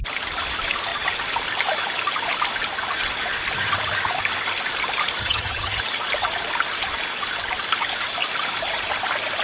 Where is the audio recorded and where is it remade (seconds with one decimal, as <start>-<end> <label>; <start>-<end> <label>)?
0.0-5.2 recorded; 5.2-5.8 remade; 5.8-9.4 recorded